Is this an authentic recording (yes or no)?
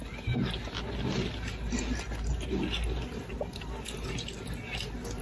yes